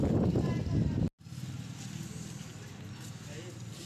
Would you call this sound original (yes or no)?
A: yes